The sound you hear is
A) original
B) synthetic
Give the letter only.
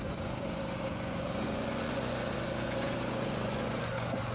B